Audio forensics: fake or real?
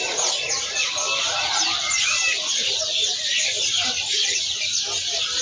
fake